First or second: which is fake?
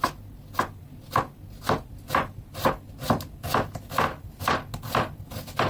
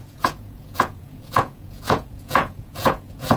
second